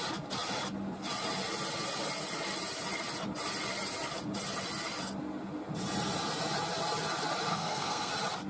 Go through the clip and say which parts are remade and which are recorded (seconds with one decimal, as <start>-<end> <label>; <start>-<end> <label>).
0.0-7.5 recorded; 7.5-8.1 remade; 8.1-8.5 recorded